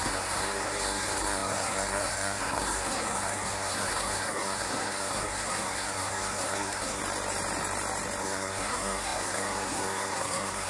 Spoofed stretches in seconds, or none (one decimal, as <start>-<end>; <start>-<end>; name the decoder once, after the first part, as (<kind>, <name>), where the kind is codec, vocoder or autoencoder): 0.0-7.0 (codec, SNAC); 8.2-10.7